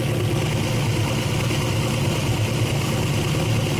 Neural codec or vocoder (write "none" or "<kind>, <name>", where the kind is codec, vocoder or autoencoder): none